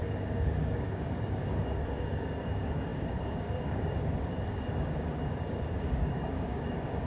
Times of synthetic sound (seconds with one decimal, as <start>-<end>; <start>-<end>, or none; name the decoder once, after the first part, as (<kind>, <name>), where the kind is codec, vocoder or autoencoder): 0.0-7.1 (codec, DAC)